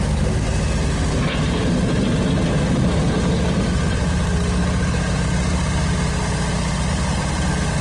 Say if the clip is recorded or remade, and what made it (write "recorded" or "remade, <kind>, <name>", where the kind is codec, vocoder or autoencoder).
recorded